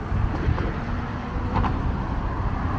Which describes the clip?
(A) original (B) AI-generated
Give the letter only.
A